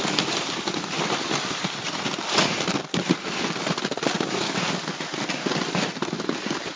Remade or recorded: recorded